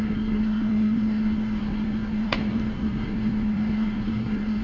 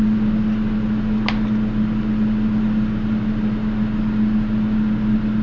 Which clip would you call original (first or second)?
second